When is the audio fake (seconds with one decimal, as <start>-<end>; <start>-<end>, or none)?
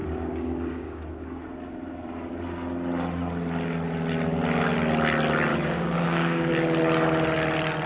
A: 0.0-1.1; 5.5-6.5